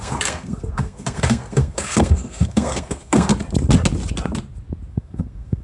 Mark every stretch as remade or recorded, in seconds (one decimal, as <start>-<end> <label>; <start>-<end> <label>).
0.0-3.3 remade; 3.3-4.9 recorded; 4.9-5.6 remade